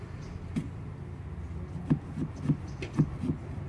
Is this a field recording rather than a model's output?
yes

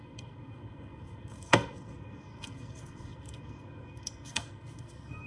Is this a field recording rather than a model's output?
no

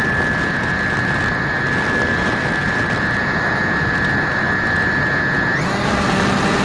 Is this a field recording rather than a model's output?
yes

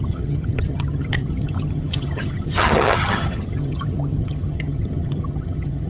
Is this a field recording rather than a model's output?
no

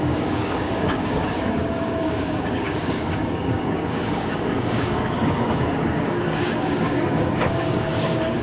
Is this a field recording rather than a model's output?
no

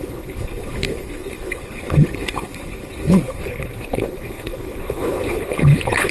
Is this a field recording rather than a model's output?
no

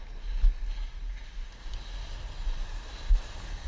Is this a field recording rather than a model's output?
yes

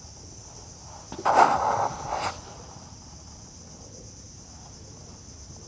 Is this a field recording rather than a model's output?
yes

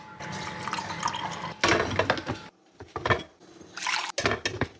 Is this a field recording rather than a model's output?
yes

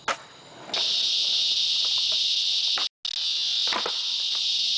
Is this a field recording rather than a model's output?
yes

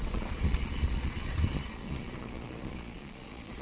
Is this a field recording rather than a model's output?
no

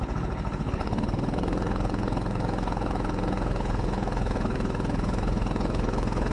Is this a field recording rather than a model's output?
no